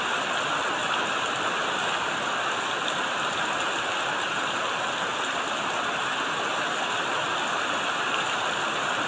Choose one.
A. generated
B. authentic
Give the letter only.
B